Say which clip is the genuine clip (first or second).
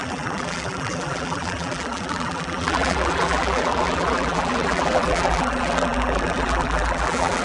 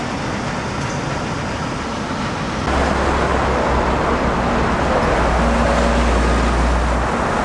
second